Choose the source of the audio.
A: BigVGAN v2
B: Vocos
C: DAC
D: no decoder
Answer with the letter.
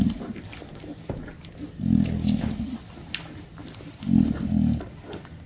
D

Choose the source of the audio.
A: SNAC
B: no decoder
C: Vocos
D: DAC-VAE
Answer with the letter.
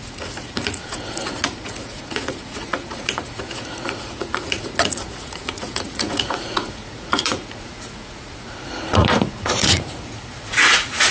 C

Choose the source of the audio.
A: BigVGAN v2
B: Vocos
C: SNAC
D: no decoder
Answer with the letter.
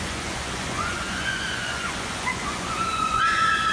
B